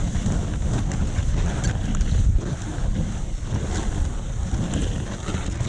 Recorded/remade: recorded